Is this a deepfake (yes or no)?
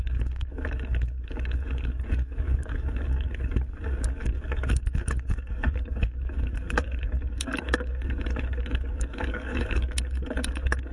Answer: yes